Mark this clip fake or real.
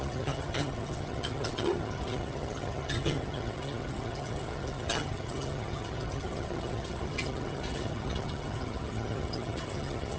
fake